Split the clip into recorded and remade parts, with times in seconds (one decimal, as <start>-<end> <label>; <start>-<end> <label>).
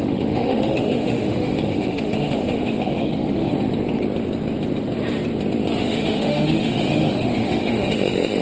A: 0.0-3.5 remade; 3.5-5.8 recorded; 5.8-8.4 remade